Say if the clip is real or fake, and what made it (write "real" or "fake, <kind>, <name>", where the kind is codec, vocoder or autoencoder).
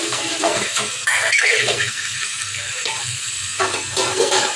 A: fake, codec, SNAC